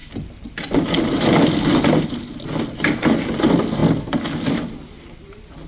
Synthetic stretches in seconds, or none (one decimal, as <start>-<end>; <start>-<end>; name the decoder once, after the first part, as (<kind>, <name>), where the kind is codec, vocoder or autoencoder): none